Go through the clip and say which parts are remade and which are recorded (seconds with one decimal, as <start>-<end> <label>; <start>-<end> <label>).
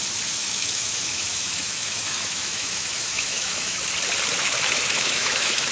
0.0-0.4 recorded; 0.4-3.8 remade; 3.8-4.4 recorded; 4.4-5.7 remade